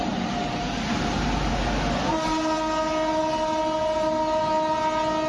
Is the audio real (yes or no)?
yes